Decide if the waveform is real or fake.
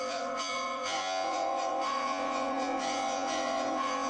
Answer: fake